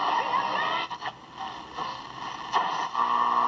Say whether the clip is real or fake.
real